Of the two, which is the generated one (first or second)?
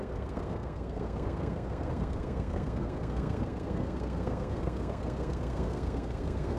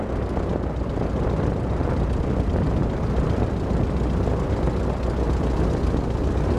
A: first